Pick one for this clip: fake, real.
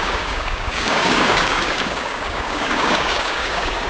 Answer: fake